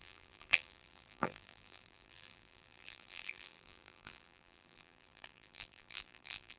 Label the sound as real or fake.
fake